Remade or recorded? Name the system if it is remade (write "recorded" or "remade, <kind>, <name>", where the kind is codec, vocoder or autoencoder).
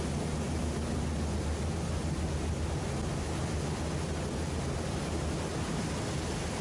recorded